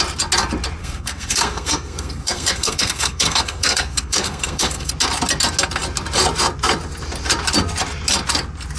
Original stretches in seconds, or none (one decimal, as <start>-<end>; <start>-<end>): 0.0-0.8; 4.9-8.8